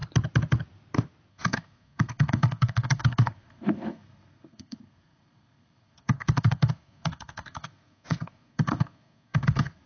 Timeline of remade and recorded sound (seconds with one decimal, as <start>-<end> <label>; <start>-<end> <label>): 0.0-1.3 recorded; 1.3-9.9 remade